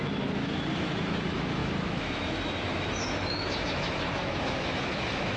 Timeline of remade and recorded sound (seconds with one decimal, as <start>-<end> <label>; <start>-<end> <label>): 0.0-5.4 remade